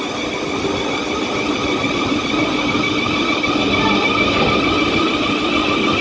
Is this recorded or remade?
recorded